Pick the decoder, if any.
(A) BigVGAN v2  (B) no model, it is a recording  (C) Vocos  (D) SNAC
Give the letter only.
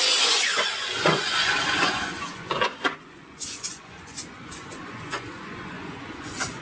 C